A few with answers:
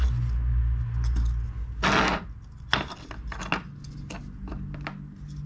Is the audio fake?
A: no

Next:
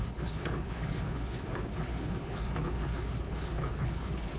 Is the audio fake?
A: yes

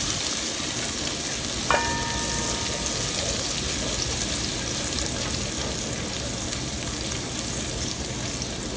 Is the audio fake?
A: no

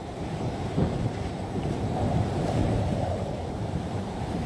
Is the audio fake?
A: yes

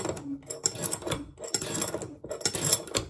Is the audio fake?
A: no